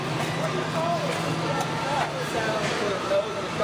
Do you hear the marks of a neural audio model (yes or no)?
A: yes